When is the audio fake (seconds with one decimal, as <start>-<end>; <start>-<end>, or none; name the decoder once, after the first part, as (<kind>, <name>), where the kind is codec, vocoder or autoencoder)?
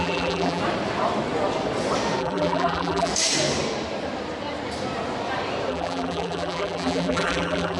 0.0-0.6 (vocoder, BigVGAN v2); 2.2-3.1; 5.7-7.8